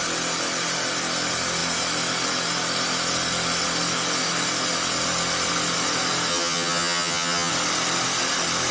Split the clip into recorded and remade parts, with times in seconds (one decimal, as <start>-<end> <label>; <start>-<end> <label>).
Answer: 0.0-6.3 recorded; 6.3-7.5 remade; 7.5-8.7 recorded